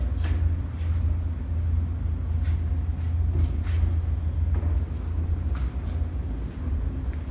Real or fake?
real